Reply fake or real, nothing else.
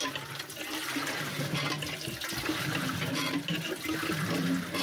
real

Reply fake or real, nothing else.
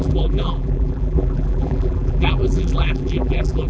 fake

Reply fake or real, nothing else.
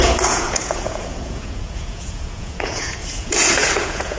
fake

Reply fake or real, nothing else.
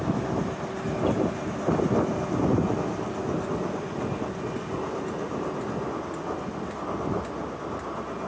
real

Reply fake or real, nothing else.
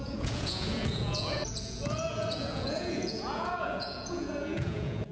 fake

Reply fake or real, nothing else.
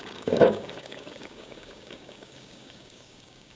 fake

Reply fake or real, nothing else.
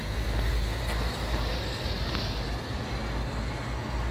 real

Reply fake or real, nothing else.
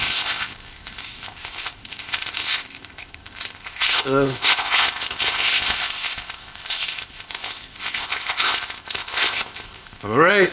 fake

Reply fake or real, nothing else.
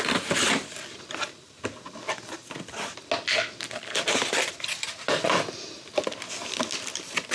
real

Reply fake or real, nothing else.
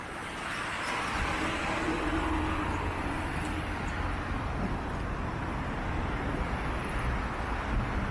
real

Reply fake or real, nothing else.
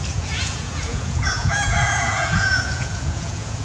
fake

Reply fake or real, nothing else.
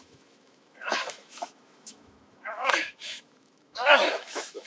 fake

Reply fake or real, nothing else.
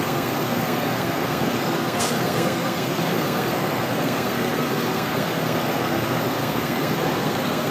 fake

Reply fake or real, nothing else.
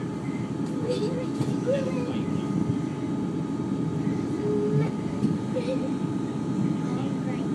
real